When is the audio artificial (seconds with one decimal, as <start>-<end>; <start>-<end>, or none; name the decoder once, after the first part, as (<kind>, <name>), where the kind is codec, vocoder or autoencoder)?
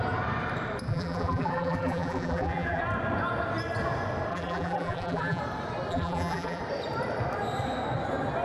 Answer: 0.9-2.8 (vocoder, BigVGAN v2); 4.3-5.4; 5.9-6.6